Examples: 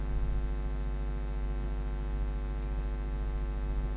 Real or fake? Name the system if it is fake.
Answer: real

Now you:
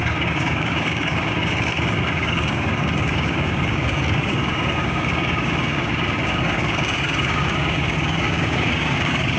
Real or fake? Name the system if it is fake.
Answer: fake, codec, DAC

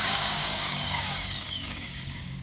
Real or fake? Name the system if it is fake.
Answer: fake, codec, DAC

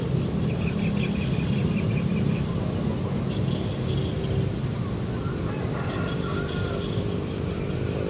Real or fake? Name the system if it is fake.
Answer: real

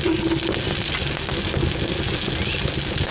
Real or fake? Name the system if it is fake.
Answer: real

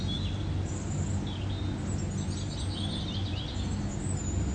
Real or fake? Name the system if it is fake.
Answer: real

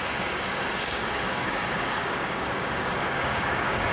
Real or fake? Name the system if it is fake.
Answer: fake, codec, DAC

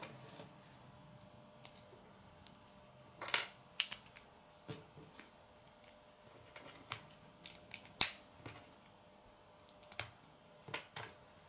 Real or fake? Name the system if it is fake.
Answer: real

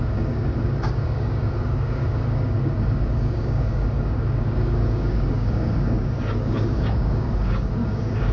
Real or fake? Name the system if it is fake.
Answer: fake, codec, DAC